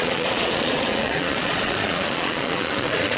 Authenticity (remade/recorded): remade